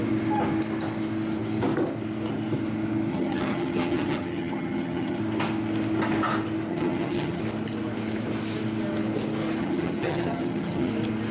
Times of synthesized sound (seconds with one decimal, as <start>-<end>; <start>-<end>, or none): 3.1-5.2; 6.7-7.4; 9.6-10.9